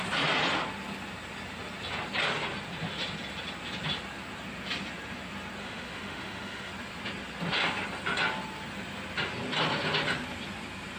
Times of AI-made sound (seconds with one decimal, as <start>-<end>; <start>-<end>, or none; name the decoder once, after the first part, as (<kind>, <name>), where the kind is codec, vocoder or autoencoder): 5.6-6.7 (autoencoder, DAC-VAE)